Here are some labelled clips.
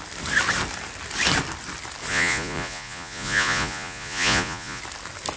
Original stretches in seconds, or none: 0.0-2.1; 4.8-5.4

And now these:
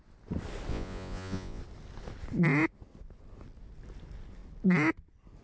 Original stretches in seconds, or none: 0.0-0.7; 1.6-5.4